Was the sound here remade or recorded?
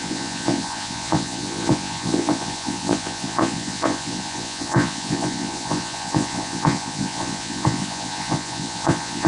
remade